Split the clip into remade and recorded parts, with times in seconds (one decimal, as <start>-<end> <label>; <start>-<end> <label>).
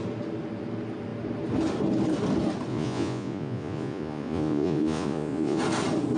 0.0-2.7 recorded; 2.7-5.6 remade; 5.6-6.2 recorded